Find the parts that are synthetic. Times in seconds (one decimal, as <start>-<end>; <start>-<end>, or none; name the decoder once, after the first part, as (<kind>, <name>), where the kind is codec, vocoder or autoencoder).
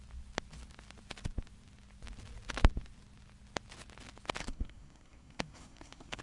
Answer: 4.4-6.2 (codec, SNAC)